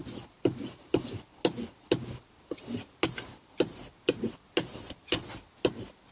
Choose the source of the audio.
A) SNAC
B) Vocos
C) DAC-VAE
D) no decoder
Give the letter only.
D